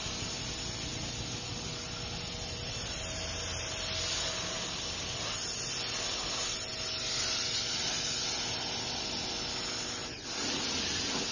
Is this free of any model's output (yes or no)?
yes